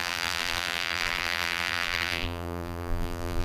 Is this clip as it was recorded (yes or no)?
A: no